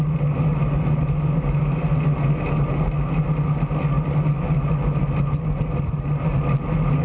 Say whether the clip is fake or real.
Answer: real